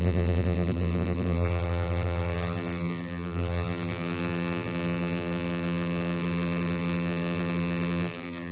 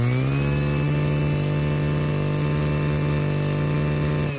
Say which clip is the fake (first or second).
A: first